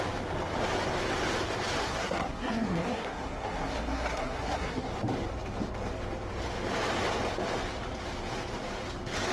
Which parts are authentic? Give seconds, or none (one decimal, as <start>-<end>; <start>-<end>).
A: 0.0-1.8; 4.9-9.3